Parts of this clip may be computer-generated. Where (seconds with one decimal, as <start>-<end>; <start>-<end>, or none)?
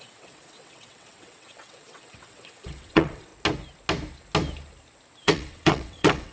0.0-3.3; 5.2-6.3